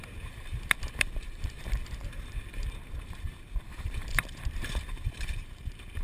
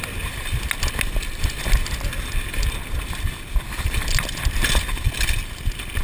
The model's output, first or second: first